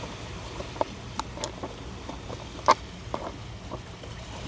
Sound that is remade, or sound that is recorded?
recorded